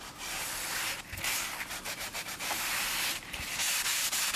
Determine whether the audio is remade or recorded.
remade